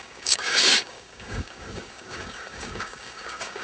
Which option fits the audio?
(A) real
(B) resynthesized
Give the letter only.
B